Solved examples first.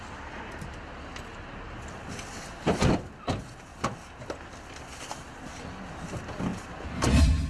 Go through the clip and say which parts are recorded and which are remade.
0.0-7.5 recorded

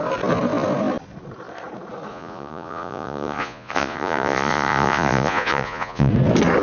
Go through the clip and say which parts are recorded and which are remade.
0.0-2.1 recorded; 2.1-6.1 remade; 6.1-6.6 recorded